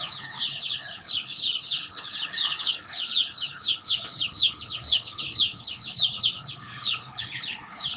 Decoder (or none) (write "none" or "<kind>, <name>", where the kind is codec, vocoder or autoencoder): codec, HILCodec